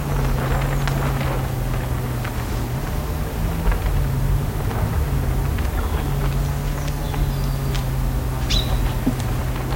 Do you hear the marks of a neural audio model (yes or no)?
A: no